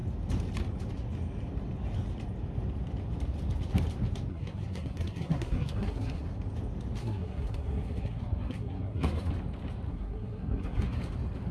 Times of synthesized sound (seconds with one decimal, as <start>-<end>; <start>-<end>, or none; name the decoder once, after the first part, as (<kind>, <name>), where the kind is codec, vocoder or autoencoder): 4.3-6.2 (codec, SNAC); 7.0-9.3; 9.9-11.0